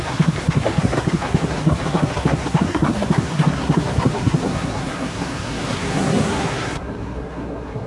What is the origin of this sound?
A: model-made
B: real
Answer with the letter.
A